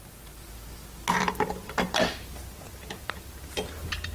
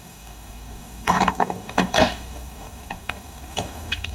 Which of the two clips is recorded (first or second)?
first